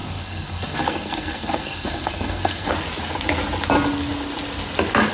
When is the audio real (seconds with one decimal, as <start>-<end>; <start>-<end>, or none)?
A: 2.7-5.1